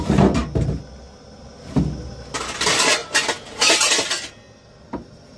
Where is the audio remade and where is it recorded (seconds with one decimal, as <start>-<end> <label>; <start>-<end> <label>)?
0.0-5.4 recorded